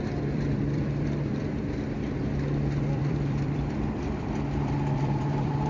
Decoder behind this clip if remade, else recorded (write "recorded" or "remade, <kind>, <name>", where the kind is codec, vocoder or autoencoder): remade, vocoder, BigVGAN v2